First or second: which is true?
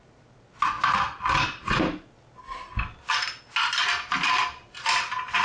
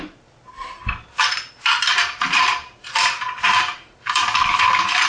first